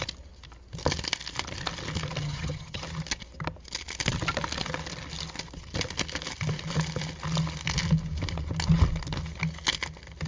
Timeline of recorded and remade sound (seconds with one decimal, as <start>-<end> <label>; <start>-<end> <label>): 0.0-2.2 recorded; 2.2-2.8 remade; 2.8-10.3 recorded

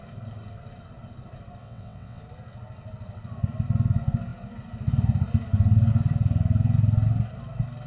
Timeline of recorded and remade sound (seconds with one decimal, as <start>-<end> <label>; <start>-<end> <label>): 0.0-1.6 recorded; 1.6-2.2 remade; 2.2-7.9 recorded